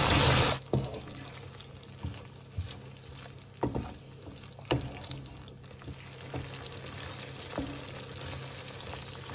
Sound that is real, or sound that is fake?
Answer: real